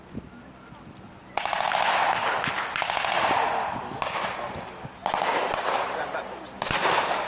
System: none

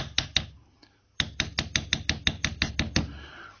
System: none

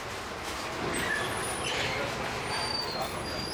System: none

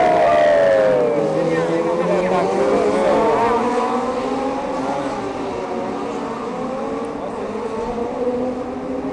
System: none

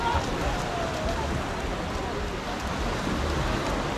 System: none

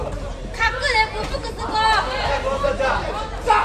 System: vocoder, BigVGAN v2